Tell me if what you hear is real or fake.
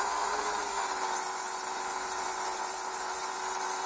fake